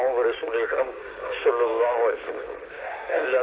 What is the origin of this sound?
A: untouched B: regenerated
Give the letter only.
B